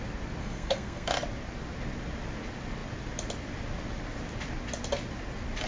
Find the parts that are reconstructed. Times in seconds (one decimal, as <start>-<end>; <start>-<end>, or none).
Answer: 0.4-1.1

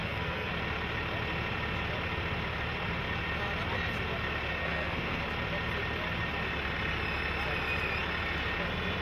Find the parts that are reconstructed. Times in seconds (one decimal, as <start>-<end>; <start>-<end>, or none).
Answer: 0.0-0.5; 4.6-5.2